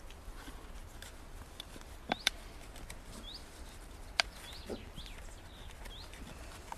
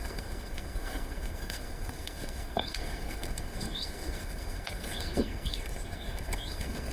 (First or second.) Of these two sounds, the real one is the first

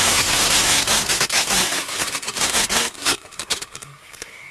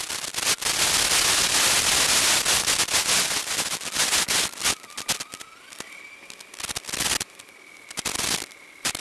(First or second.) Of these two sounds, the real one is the second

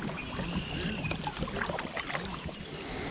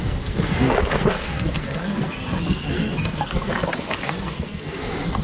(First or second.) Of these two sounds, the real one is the first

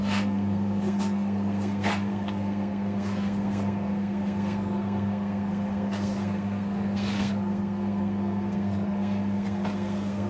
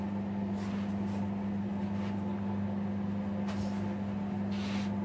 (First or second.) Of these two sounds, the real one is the second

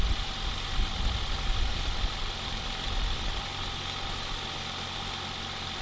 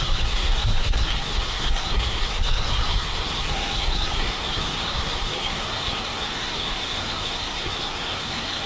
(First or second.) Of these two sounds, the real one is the first